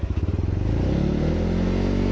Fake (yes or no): no